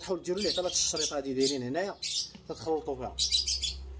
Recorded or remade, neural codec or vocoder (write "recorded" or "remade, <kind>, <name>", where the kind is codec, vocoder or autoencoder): recorded